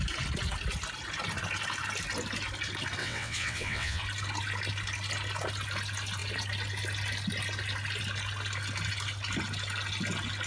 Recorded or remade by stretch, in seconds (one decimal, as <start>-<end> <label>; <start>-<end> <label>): 0.0-3.0 recorded; 3.0-4.0 remade; 4.0-10.5 recorded